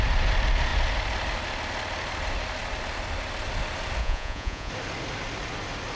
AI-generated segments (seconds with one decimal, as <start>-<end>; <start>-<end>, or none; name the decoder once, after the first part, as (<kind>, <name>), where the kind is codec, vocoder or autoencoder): 4.0-4.7 (vocoder, Vocos)